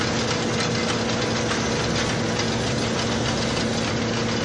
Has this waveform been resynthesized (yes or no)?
no